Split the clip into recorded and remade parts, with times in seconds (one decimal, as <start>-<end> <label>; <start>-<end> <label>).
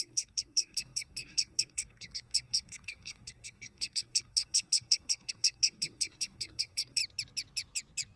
0.0-7.0 remade; 7.0-8.2 recorded